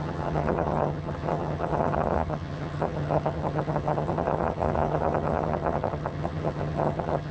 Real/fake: fake